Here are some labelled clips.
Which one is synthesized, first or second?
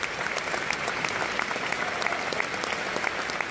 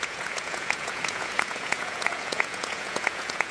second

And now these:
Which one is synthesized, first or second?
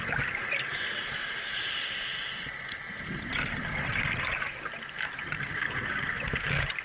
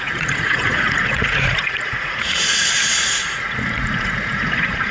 second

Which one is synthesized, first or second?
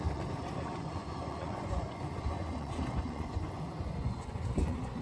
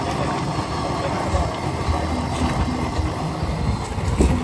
first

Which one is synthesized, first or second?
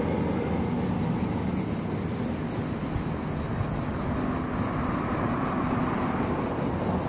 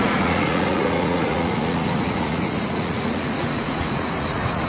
second